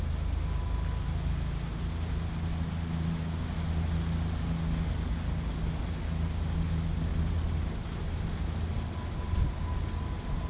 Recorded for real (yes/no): yes